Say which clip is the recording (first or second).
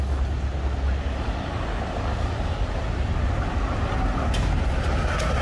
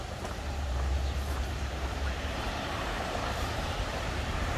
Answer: first